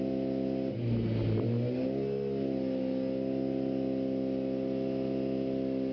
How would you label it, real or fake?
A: real